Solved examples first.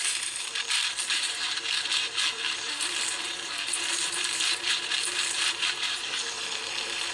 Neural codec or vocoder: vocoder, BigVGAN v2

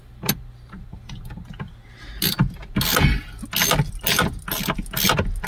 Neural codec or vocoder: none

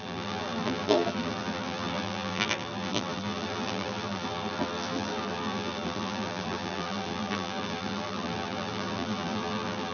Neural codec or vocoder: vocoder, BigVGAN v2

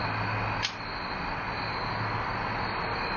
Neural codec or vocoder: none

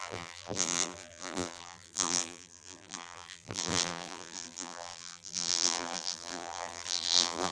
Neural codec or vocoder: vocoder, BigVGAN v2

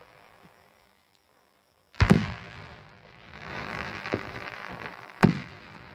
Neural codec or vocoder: vocoder, BigVGAN v2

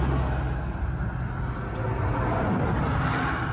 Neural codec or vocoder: none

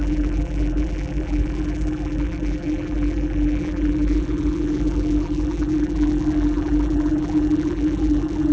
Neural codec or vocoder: vocoder, BigVGAN v2